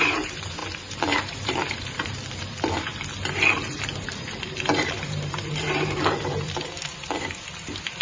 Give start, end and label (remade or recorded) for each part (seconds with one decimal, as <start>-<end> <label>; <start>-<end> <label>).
0.0-2.9 remade; 2.9-3.7 recorded; 3.7-8.0 remade